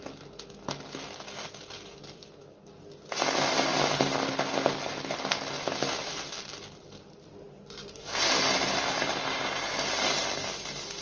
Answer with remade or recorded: recorded